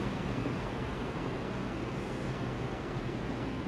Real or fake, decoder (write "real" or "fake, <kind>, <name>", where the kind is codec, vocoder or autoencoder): fake, codec, SNAC